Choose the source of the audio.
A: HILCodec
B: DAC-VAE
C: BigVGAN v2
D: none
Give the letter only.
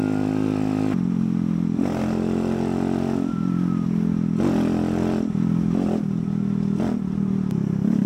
D